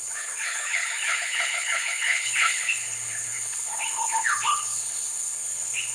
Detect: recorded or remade remade